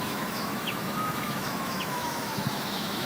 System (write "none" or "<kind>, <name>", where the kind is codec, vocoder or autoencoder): autoencoder, DAC-VAE